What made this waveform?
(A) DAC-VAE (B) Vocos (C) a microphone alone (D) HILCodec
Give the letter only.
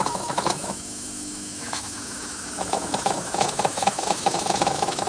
A